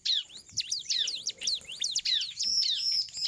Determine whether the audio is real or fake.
real